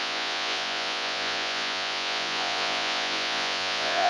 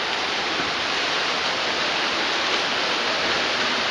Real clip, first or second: second